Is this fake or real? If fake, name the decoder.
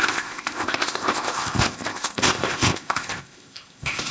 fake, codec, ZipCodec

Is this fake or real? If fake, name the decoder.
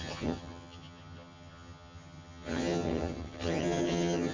fake, vocoder, HiFi-GAN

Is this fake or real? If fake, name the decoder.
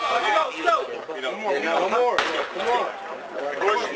real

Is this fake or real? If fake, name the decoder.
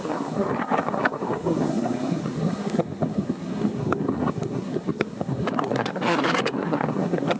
fake, codec, SNAC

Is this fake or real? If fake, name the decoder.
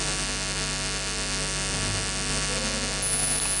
real